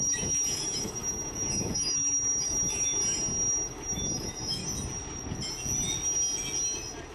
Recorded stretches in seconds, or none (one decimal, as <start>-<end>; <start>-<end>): 3.0-3.5; 4.6-7.1